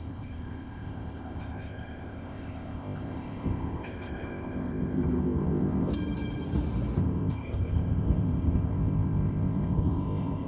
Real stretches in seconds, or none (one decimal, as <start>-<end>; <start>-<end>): 5.9-7.0